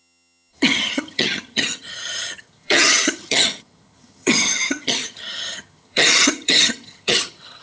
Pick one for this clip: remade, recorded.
remade